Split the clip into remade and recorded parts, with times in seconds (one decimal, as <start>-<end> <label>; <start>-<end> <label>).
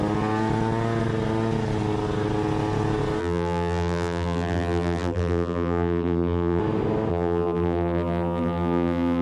0.0-3.2 recorded; 3.2-6.6 remade; 6.6-7.1 recorded; 7.1-9.2 remade